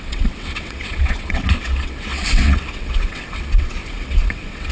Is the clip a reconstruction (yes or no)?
yes